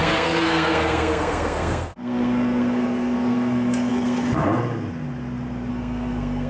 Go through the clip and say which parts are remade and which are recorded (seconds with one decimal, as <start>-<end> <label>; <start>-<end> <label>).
0.0-4.6 remade; 4.6-5.7 recorded; 5.7-6.5 remade